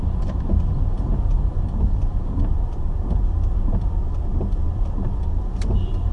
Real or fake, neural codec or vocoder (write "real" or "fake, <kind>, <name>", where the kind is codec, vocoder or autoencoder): fake, vocoder, BigVGAN v2